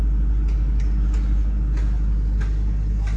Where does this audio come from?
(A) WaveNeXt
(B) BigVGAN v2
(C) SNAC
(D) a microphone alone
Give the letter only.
D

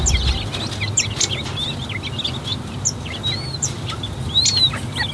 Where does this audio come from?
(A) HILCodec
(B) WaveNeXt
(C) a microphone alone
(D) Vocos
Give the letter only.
C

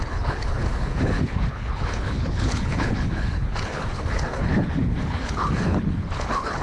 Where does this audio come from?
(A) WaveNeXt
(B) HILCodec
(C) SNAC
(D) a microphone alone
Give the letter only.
B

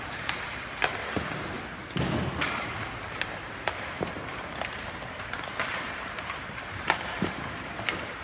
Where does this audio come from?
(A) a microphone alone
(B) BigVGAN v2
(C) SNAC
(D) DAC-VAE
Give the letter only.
B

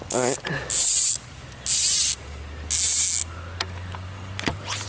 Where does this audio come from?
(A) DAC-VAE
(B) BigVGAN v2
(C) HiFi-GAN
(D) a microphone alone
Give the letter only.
D